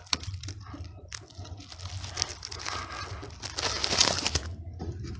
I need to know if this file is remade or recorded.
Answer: recorded